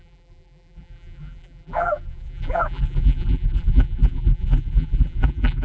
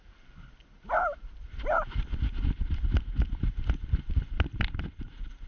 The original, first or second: second